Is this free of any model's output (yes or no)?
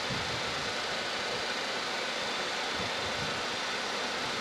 yes